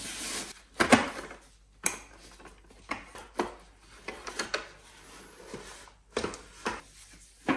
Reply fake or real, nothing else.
real